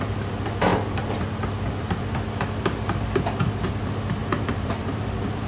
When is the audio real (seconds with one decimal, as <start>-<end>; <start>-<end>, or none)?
0.0-4.2; 4.9-5.5